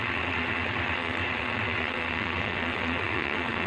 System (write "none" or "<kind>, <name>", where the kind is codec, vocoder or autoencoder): vocoder, WaveNeXt